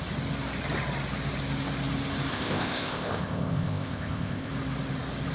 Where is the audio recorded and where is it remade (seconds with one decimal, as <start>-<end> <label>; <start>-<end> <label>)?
0.0-2.3 recorded; 2.3-4.5 remade; 4.5-5.3 recorded